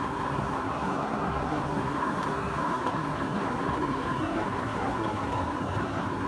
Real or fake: fake